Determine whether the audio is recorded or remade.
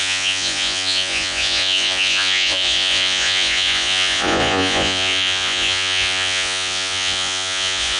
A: remade